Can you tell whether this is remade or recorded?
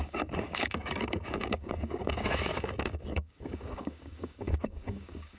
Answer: remade